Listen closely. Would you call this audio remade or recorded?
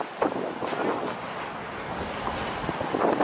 recorded